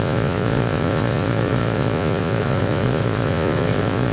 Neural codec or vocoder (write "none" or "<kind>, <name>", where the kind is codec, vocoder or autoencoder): vocoder, Vocos